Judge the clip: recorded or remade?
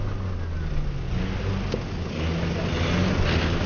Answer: recorded